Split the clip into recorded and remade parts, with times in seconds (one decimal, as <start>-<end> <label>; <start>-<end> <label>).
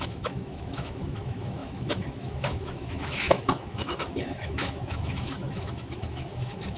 0.0-6.8 remade